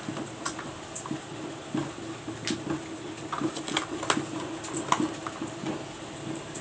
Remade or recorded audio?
recorded